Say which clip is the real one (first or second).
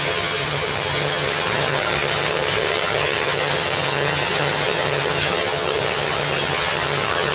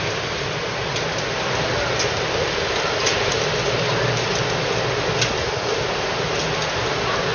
second